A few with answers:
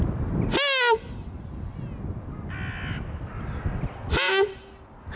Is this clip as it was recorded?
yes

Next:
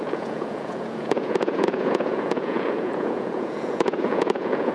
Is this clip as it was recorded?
no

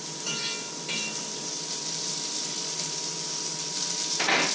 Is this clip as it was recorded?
yes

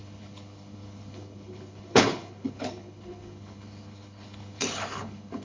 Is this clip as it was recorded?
no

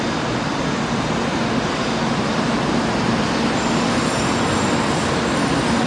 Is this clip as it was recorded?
yes